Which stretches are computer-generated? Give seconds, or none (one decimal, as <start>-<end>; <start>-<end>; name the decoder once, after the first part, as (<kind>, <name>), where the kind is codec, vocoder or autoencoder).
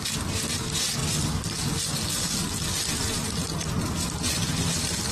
0.0-1.0 (vocoder, BigVGAN v2); 4.1-5.1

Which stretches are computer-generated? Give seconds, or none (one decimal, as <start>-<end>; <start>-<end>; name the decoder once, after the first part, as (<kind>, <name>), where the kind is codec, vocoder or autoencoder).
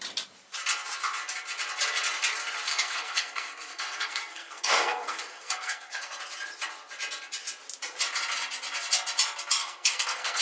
2.7-6.2 (codec, SNAC); 9.6-10.4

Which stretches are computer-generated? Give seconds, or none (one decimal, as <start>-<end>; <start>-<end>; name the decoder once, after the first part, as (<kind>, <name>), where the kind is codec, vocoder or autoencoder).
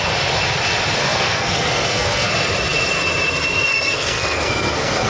1.0-2.3 (codec, SNAC); 3.7-5.1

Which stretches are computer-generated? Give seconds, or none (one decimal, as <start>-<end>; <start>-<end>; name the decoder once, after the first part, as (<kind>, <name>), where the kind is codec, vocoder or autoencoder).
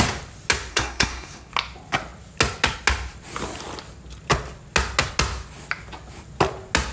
0.7-1.5 (codec, SNAC)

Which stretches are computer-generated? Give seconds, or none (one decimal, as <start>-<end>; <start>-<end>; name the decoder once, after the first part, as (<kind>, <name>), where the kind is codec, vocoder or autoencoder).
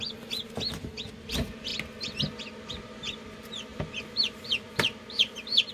0.0-1.7 (vocoder, BigVGAN v2); 2.7-5.7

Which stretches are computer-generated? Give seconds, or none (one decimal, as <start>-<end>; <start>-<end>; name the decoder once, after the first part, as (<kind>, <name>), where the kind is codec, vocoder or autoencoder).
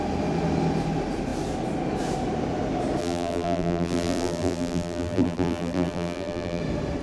3.0-6.6 (vocoder, BigVGAN v2)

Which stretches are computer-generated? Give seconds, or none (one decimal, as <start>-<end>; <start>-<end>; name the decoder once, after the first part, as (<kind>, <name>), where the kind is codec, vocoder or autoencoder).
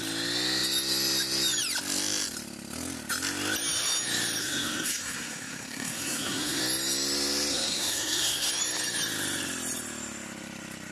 4.4-6.6 (codec, SNAC); 7.5-8.5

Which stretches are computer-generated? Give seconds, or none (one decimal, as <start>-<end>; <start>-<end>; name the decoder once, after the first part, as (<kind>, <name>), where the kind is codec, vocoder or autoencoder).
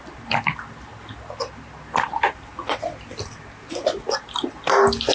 none